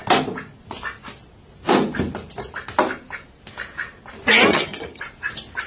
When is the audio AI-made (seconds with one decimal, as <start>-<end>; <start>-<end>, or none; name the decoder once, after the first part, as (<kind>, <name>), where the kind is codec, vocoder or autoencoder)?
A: 4.5-5.0 (vocoder, HiFi-GAN)